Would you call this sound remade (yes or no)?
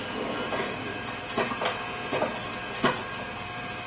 no